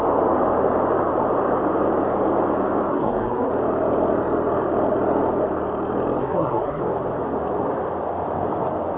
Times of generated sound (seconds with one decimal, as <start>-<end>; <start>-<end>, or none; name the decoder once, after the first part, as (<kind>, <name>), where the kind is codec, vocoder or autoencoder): 2.9-3.5 (codec, SNAC); 6.2-6.8